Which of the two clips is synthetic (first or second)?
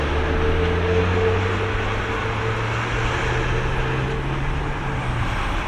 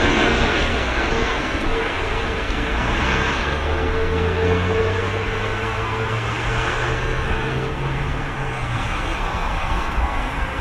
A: second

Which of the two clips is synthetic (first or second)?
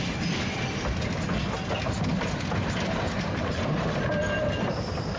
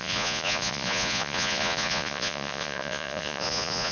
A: second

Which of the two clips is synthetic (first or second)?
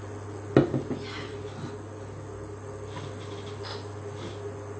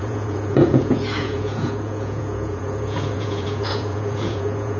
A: second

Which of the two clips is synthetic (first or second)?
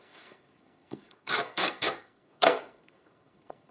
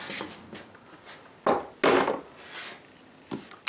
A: first